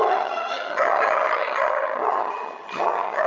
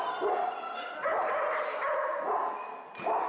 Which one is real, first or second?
second